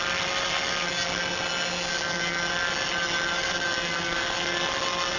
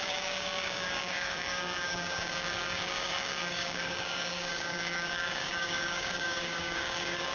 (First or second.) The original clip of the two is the first